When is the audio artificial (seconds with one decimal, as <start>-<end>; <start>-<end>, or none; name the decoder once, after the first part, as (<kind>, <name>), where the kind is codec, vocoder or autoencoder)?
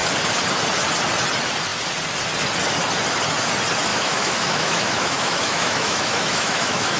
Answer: 3.9-7.0 (autoencoder, DAC-VAE)